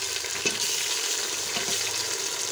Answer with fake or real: real